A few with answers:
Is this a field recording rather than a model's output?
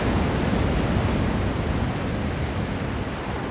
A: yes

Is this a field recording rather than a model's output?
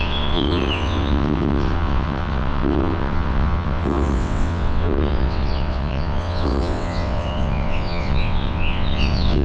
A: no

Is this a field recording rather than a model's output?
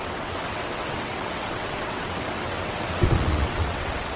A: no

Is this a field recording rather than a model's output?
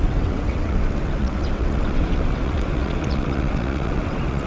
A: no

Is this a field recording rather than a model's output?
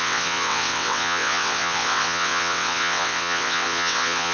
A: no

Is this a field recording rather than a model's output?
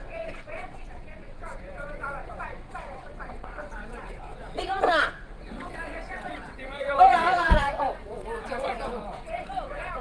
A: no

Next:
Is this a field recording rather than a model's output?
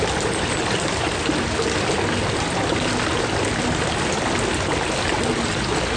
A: yes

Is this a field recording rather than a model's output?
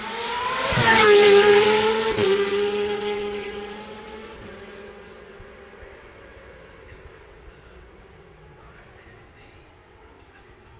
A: no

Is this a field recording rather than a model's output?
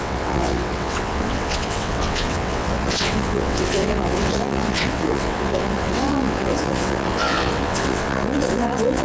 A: no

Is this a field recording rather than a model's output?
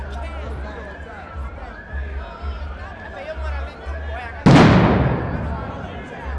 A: yes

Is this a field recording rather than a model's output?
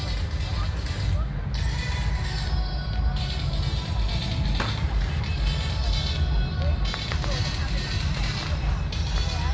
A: yes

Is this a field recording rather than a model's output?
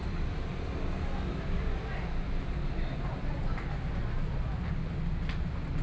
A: yes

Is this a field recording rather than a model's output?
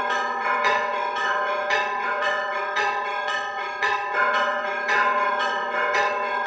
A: no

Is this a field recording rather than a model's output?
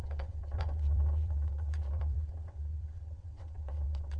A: no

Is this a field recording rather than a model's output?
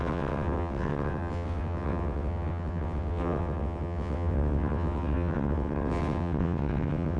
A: no